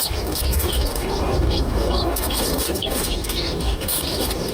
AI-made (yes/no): yes